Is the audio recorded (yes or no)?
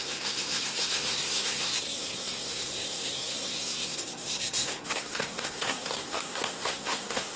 no